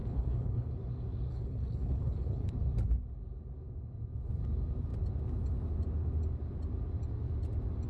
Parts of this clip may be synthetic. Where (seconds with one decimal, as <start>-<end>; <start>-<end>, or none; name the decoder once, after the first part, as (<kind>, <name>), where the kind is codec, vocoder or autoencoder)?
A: 0.0-0.7 (codec, HILCodec); 1.3-2.5